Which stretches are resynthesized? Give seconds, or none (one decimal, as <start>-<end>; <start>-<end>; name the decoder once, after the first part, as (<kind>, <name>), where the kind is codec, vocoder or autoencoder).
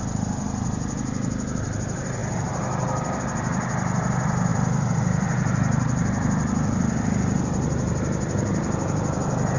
2.2-3.2 (vocoder, BigVGAN v2); 4.5-9.6